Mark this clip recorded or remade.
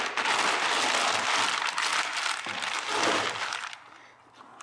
recorded